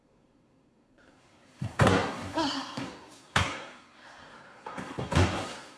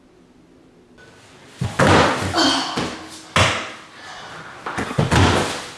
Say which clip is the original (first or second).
second